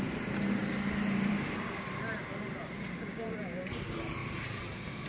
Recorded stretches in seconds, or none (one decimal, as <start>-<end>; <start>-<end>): 0.0-0.6; 1.3-2.1; 3.6-4.2